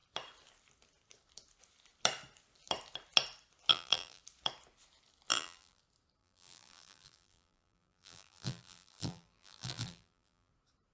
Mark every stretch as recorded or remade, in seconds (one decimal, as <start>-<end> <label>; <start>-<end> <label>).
0.0-3.7 recorded; 3.7-4.2 remade; 4.2-5.3 recorded; 5.3-5.8 remade; 5.8-6.2 recorded; 6.2-10.5 remade; 10.5-10.9 recorded